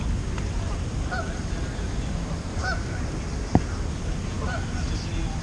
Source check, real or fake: real